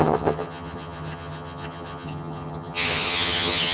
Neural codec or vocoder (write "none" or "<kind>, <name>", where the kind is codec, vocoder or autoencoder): vocoder, HiFi-GAN